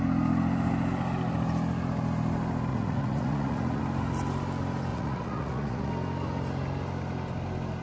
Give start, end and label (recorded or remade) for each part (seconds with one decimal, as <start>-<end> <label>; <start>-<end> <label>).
0.0-2.7 recorded; 2.7-3.8 remade; 3.8-4.9 recorded; 4.9-5.9 remade; 5.9-7.8 recorded